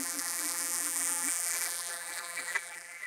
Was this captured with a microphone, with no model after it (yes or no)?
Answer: no